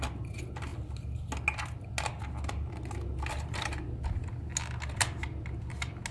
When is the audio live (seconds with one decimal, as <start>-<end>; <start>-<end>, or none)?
0.0-6.1